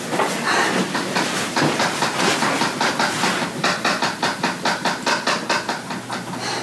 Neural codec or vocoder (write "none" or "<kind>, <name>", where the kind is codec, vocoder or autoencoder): none